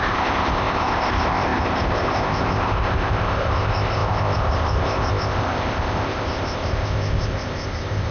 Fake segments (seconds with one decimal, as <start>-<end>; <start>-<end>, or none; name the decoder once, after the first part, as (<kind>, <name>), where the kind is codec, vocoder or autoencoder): 0.0-8.1 (codec, ZipCodec)